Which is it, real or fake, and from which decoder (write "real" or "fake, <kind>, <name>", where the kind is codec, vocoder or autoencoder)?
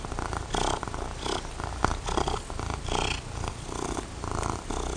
real